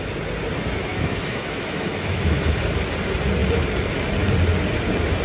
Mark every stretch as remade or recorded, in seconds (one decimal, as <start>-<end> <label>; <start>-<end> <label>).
0.0-0.9 recorded; 0.9-2.6 remade; 2.6-5.2 recorded